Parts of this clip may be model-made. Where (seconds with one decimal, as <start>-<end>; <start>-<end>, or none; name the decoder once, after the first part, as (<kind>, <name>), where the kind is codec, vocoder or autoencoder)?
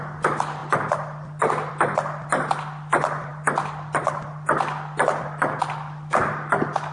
none